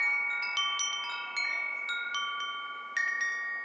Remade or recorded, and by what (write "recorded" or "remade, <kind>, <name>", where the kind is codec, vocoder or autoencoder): recorded